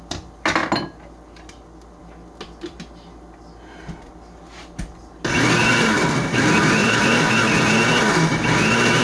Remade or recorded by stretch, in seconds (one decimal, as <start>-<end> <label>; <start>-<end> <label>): 0.0-6.8 recorded; 6.8-7.3 remade; 7.3-9.0 recorded